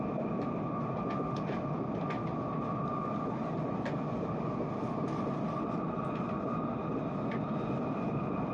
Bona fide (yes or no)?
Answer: yes